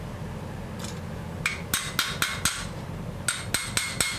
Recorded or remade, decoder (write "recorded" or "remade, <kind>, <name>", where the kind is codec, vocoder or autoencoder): recorded